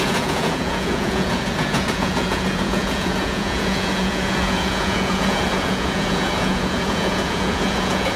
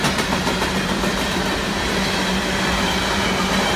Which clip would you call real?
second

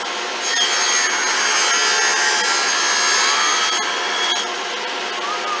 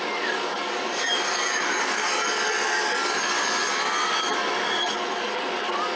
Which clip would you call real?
first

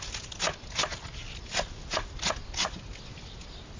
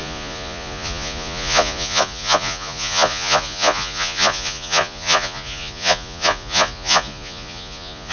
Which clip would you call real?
first